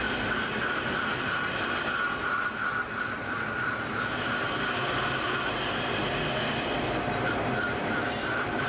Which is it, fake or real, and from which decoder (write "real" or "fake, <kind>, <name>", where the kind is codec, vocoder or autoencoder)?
real